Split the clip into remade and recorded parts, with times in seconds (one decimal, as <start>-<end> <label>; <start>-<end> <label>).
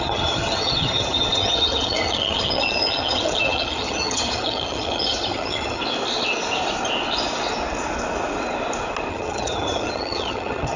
0.0-5.8 remade; 5.8-9.1 recorded; 9.1-10.8 remade